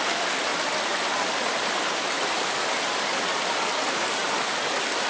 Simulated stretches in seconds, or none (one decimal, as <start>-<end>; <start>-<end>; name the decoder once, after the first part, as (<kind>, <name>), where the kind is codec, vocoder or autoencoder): 0.5-3.6 (vocoder, BigVGAN v2)